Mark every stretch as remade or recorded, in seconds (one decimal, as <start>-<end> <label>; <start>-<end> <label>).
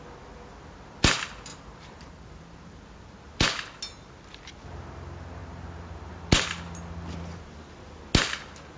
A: 0.0-1.5 recorded; 1.5-2.3 remade; 2.3-8.8 recorded